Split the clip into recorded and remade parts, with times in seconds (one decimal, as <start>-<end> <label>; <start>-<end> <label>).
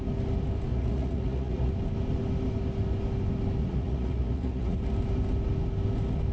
0.0-0.7 recorded; 0.7-1.7 remade; 1.7-3.6 recorded; 3.6-4.8 remade; 4.8-6.3 recorded